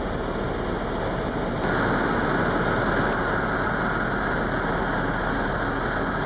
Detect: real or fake real